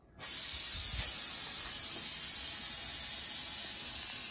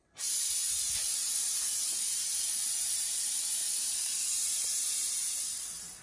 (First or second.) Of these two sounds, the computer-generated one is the second